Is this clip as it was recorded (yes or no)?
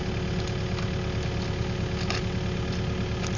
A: yes